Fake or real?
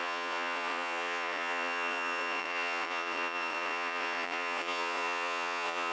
fake